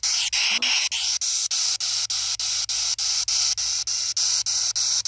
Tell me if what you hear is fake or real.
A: real